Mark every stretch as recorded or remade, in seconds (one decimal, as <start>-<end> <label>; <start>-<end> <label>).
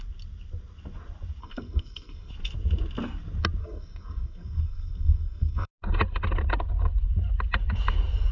0.0-1.4 recorded; 1.4-2.3 remade; 2.3-3.6 recorded; 3.6-5.7 remade; 5.7-8.3 recorded